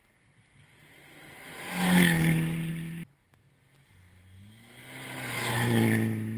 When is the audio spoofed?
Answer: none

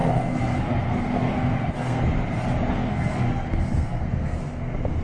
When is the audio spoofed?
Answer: 0.0-2.0 (codec, SNAC); 2.7-5.0